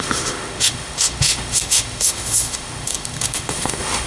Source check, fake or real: fake